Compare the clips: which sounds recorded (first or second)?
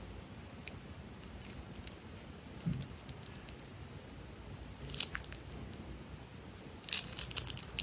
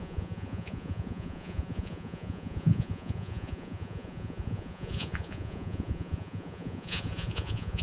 first